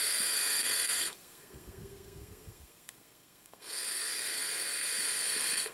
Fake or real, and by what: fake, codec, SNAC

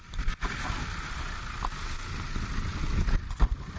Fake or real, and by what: real